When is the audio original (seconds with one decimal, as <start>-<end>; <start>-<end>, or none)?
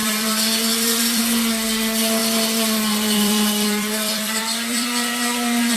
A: 1.2-2.2